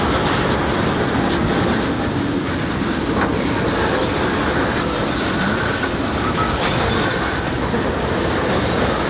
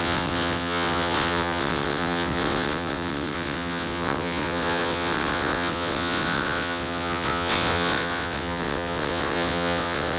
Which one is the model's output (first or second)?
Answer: second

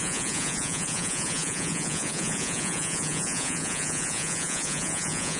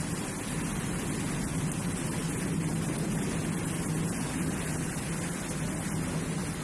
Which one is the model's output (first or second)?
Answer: first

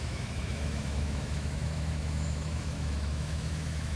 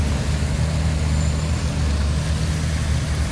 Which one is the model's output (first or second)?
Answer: first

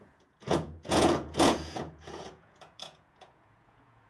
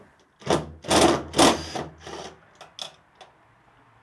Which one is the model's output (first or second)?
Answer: first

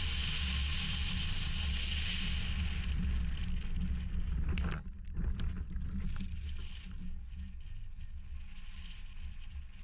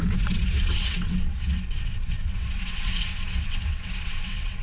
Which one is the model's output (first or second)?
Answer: second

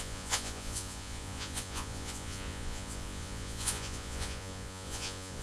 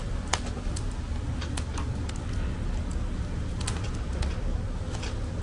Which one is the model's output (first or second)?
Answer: first